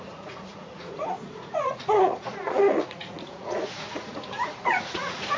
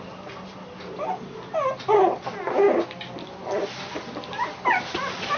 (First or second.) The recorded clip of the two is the second